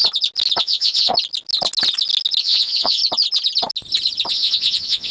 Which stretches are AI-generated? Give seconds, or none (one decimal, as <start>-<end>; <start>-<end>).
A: 0.6-1.1; 2.4-3.0; 4.3-5.1